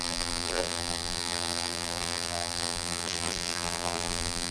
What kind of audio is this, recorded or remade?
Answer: remade